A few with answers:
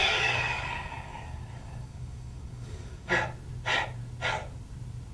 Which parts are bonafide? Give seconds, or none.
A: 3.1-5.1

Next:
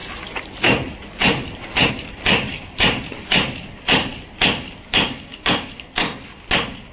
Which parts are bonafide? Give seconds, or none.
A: 0.0-4.9; 5.7-6.9

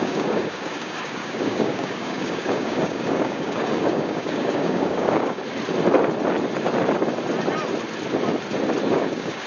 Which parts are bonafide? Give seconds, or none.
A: 5.4-8.9

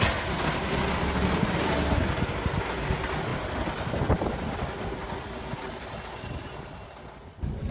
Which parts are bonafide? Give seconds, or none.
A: 0.0-7.7